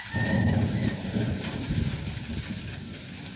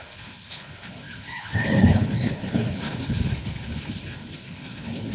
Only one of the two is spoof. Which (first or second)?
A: second